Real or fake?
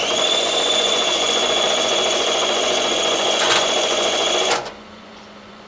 fake